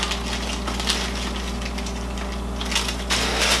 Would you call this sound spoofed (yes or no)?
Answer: no